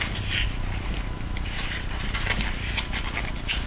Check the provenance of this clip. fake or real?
real